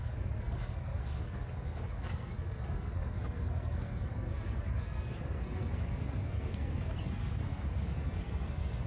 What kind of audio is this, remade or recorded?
remade